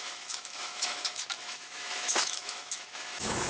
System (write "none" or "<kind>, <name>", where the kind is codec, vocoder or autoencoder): autoencoder, DAC-VAE